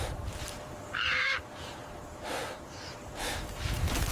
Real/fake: fake